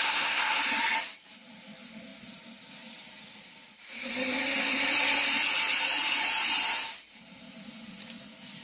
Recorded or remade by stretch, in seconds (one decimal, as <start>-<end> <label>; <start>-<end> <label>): 0.0-0.6 remade; 0.6-8.6 recorded